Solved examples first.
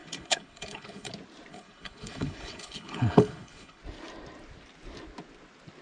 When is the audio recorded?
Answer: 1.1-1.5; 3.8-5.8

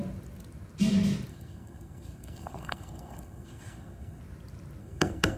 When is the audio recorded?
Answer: 0.0-1.3; 4.2-4.8

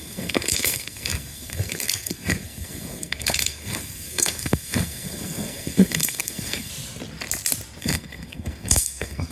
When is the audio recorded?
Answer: 6.7-7.8

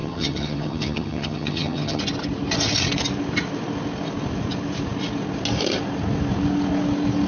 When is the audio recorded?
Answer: 2.0-7.3

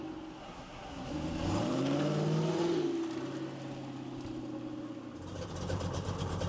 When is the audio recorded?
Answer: 0.0-0.4; 1.1-6.5

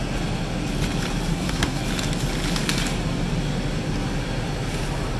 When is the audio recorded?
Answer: 0.0-1.3; 1.8-5.2